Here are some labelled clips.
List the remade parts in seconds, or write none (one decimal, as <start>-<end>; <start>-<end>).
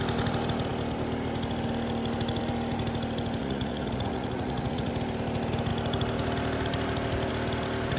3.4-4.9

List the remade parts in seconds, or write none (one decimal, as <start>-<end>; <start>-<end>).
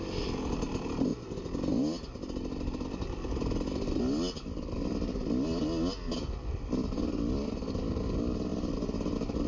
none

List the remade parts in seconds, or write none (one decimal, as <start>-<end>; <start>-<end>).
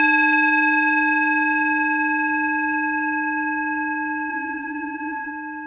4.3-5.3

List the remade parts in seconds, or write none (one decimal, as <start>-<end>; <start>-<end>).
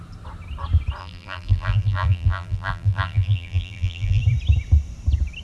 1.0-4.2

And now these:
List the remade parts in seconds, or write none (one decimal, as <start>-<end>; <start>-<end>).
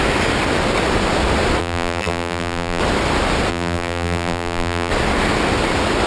1.6-2.8; 3.5-4.9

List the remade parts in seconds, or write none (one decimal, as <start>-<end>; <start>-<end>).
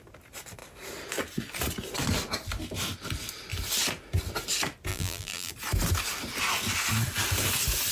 4.9-5.5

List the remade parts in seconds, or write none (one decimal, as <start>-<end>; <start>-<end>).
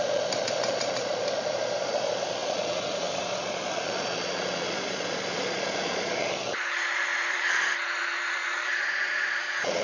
0.0-9.8